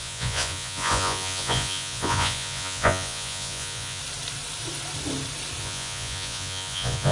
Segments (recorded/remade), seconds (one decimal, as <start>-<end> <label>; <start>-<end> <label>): 0.0-4.0 remade; 4.0-5.6 recorded; 5.6-7.1 remade